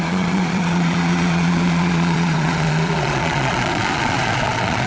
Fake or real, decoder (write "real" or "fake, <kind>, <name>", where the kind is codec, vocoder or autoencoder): fake, vocoder, Vocos